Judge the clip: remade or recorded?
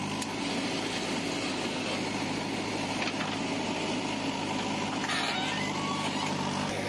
recorded